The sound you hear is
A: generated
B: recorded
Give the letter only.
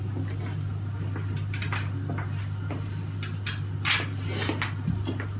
B